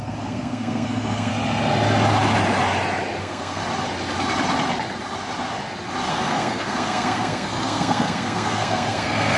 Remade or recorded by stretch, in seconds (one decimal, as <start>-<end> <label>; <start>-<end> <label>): 0.0-1.3 remade; 1.3-3.2 recorded; 3.2-3.6 remade; 3.6-6.1 recorded; 6.1-9.4 remade